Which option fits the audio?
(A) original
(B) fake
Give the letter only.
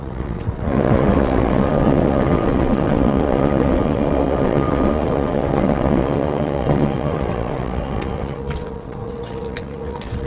B